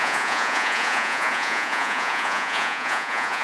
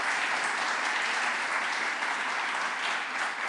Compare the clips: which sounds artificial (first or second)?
first